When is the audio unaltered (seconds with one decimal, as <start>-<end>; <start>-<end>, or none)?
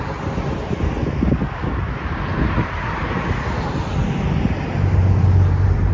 0.0-5.9